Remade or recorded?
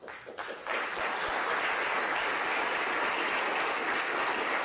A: recorded